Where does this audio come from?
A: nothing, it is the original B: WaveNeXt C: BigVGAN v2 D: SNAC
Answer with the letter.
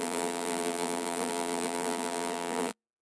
C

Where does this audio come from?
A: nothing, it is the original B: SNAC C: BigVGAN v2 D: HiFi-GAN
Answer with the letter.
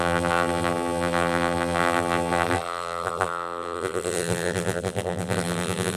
C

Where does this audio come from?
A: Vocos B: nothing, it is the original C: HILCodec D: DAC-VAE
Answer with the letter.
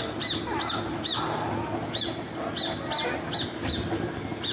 B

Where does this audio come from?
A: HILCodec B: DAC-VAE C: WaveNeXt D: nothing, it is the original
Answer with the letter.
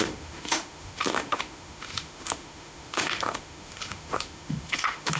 B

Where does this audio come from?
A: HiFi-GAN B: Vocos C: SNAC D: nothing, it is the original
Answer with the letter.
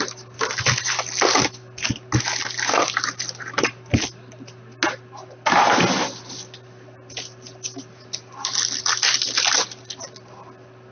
D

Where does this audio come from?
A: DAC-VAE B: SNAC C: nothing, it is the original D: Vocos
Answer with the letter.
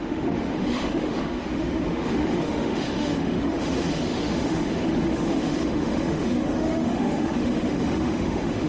A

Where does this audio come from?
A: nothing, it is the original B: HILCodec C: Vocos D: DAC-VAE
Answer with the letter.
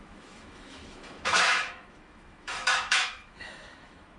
D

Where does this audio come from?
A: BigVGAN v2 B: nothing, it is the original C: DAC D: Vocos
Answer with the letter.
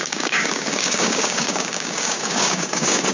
C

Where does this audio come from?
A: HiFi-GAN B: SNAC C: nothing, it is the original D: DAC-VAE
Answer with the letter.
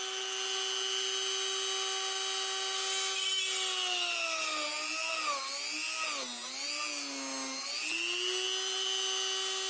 C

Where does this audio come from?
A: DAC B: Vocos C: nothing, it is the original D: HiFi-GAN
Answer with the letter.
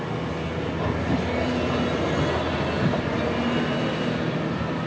C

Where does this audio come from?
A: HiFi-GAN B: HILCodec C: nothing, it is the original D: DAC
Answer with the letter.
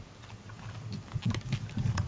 C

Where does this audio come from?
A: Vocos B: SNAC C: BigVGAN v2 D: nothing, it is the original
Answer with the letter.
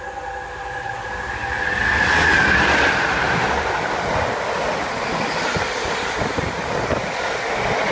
D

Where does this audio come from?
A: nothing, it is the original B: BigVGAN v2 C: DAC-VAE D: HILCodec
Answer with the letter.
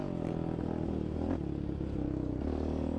A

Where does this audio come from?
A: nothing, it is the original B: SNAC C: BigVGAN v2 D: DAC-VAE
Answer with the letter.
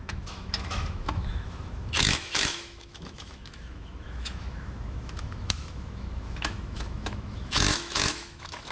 D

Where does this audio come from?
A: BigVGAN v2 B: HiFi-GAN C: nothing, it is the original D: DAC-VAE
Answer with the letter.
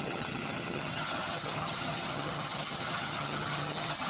B